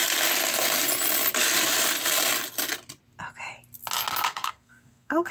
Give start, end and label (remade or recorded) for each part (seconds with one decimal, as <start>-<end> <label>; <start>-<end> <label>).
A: 0.0-4.1 recorded; 4.1-5.3 remade

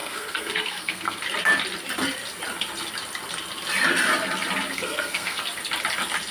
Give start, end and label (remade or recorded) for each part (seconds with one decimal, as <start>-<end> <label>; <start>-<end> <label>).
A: 0.0-1.2 remade; 1.2-4.7 recorded; 4.7-5.4 remade; 5.4-6.3 recorded

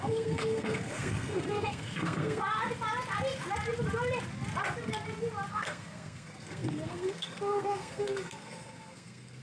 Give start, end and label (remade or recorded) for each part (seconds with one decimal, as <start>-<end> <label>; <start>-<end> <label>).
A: 0.0-2.4 remade; 2.4-5.5 recorded; 5.5-9.4 remade